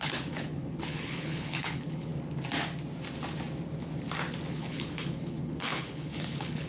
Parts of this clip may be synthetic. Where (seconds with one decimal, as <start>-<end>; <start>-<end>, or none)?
0.0-2.1; 4.5-6.7